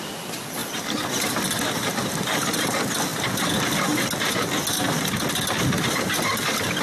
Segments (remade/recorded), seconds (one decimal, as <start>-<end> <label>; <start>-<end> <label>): 0.0-6.8 recorded